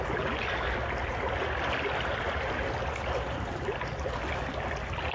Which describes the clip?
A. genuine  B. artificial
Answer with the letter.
A